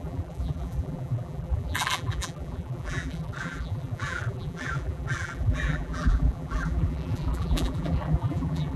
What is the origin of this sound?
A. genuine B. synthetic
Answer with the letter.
B